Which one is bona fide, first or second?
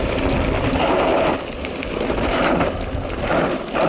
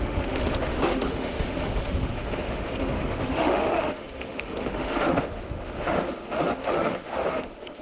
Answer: first